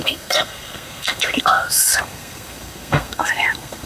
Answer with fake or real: fake